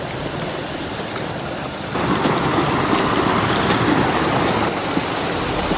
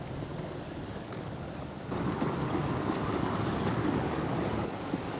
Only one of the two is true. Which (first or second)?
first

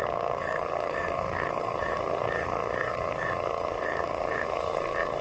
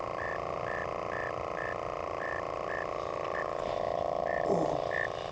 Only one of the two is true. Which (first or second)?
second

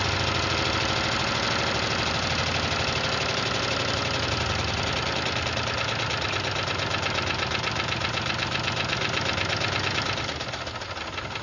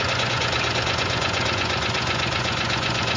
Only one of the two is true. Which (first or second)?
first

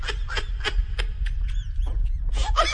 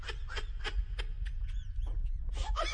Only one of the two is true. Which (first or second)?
first